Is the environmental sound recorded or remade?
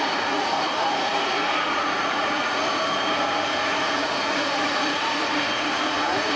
remade